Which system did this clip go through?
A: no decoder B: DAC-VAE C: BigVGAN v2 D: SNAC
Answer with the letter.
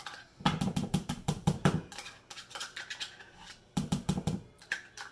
C